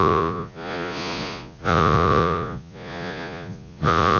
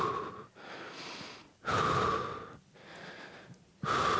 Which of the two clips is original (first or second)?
second